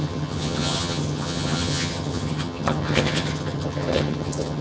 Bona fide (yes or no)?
no